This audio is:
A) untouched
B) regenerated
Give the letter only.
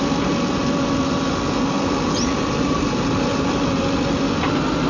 B